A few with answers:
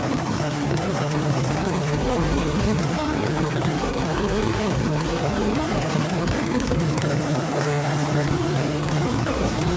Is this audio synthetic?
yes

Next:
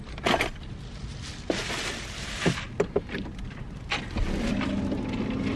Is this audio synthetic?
no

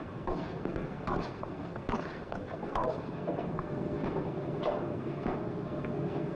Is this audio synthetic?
yes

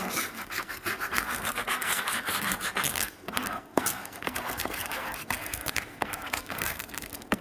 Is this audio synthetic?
yes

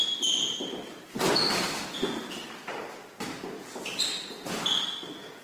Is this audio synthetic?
no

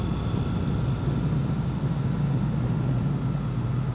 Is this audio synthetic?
no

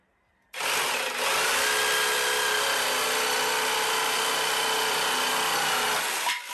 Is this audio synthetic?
no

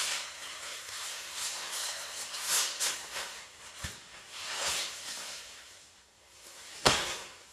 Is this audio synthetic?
yes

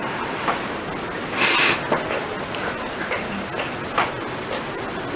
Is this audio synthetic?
no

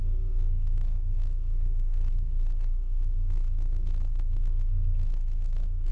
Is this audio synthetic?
yes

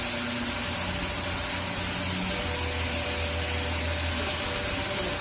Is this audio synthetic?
no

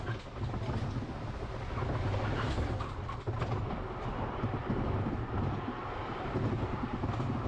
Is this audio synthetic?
no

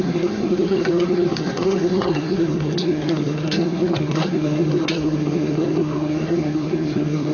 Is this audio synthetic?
yes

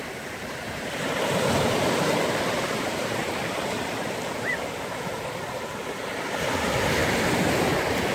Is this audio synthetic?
no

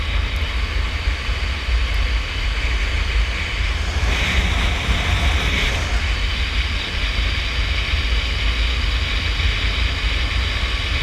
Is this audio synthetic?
no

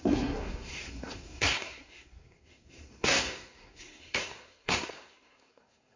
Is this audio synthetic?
yes